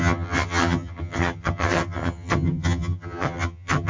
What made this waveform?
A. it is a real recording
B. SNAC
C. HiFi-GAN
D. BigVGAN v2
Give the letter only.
C